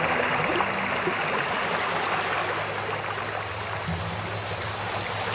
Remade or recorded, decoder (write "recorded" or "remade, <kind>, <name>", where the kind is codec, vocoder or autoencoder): recorded